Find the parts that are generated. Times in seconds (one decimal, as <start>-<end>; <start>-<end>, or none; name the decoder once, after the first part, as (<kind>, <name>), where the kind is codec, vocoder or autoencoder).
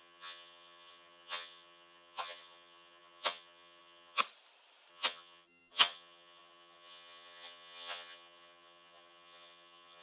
0.0-4.2 (vocoder, HiFi-GAN); 4.9-10.0